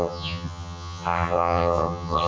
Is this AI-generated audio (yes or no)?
yes